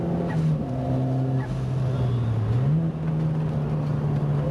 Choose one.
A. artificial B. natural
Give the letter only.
B